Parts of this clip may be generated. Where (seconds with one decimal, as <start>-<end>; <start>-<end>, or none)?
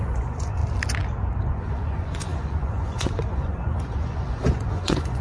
0.0-0.6; 1.5-5.2